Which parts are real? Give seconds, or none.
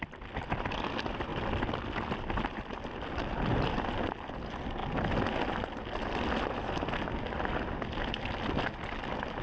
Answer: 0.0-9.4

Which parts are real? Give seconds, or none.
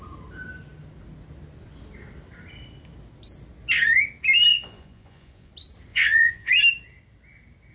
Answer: 0.0-4.5; 5.5-5.9; 6.5-7.7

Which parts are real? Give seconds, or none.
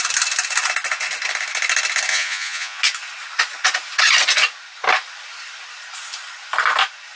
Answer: 0.0-2.1; 2.8-7.2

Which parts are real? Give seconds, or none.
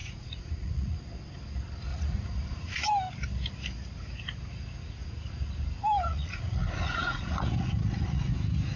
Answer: 1.0-1.9; 2.9-6.1; 8.3-8.8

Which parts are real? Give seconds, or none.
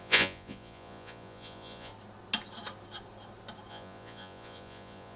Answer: 1.9-3.7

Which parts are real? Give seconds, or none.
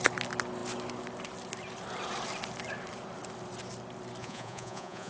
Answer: 0.0-4.2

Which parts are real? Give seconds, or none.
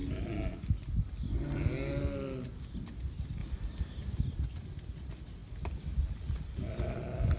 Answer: 0.0-7.4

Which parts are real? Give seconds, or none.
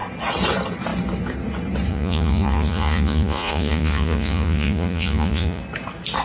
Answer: 0.0-1.9; 5.6-6.2